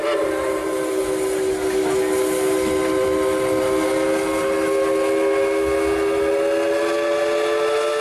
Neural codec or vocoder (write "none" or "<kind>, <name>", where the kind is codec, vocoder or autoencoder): none